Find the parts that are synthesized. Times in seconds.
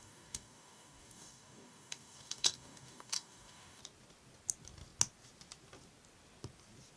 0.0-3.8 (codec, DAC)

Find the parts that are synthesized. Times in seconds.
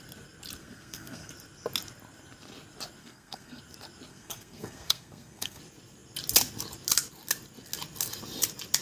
0.6-1.3 (codec, SNAC); 3.0-3.6; 4.1-5.6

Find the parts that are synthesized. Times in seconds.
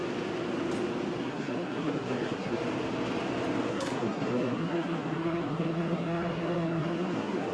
1.2-2.6 (codec, SNAC); 3.7-7.5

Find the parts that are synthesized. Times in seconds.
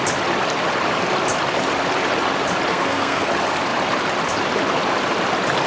2.7-3.3 (codec, SNAC)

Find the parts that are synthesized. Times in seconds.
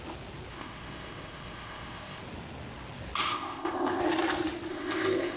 0.5-2.2 (codec, ZipCodec); 3.2-4.0; 4.7-5.4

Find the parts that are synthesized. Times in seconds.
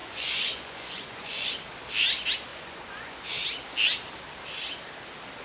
0.0-1.5 (vocoder, Vocos); 2.5-3.2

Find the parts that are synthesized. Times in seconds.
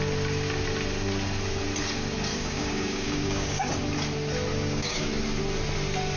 2.3-3.7 (codec, DAC); 4.5-5.1